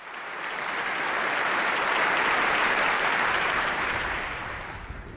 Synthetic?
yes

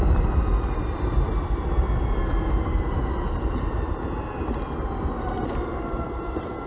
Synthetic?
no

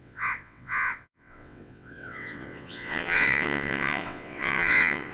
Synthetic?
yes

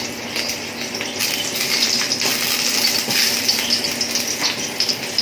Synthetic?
no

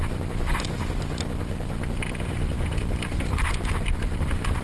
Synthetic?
no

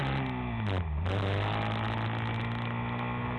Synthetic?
no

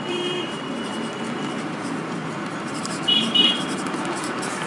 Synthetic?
yes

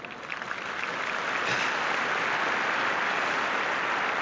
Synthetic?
no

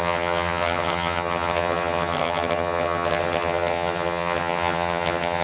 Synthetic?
yes